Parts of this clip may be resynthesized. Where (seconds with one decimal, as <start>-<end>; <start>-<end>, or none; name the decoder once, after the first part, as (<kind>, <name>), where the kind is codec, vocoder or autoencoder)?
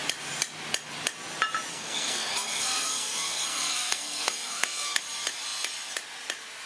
1.7-5.0 (codec, SNAC)